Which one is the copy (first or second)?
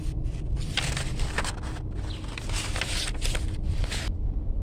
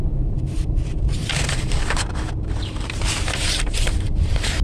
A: second